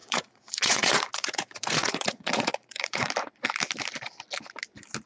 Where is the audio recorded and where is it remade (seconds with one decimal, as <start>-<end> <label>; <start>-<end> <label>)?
0.0-3.1 remade; 3.1-5.1 recorded